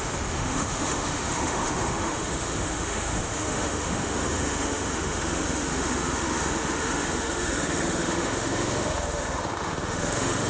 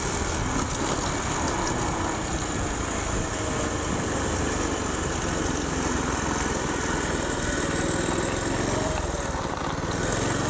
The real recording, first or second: second